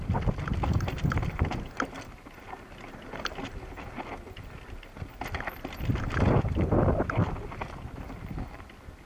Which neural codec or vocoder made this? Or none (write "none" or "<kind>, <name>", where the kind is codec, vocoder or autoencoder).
none